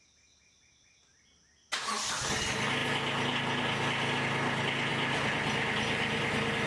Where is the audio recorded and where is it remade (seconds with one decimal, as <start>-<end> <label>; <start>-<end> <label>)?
0.0-6.7 recorded